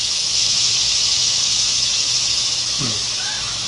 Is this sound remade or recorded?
remade